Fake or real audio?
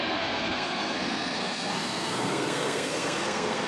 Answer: fake